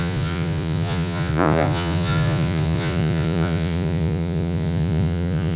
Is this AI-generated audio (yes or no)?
yes